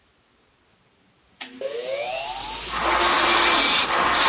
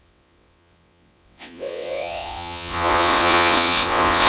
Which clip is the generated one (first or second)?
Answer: second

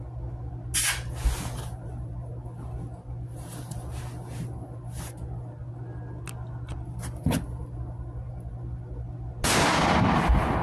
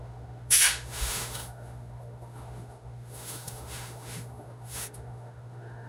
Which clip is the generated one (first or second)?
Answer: second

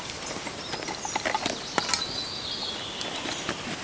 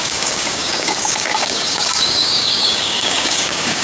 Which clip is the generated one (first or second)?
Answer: second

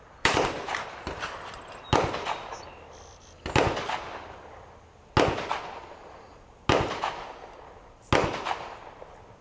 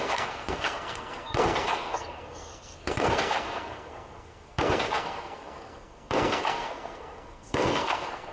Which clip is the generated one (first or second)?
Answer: second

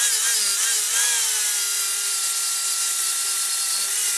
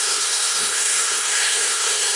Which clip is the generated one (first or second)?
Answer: second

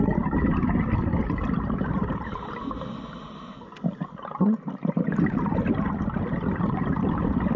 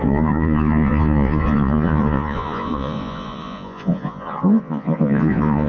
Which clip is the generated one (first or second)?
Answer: second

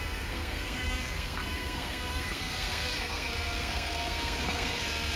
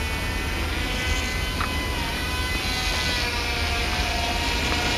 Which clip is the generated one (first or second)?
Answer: first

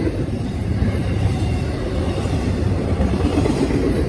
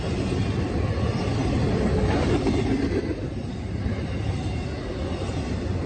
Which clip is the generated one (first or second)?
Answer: first